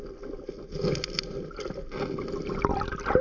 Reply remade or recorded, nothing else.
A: recorded